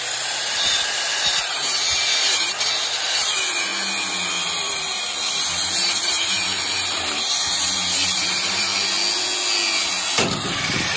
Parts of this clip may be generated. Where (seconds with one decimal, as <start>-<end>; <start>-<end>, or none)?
0.0-3.7; 4.6-8.7